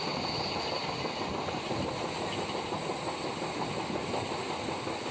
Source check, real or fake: real